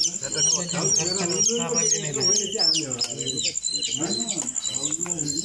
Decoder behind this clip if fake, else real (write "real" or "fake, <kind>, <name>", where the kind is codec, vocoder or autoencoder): real